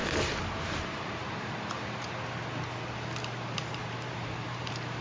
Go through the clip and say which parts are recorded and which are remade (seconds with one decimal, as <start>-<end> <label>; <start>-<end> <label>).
0.0-2.1 remade; 2.1-3.8 recorded; 3.8-5.0 remade